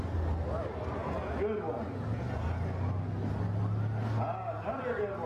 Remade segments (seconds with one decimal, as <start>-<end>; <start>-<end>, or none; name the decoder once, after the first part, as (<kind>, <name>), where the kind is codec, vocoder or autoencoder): none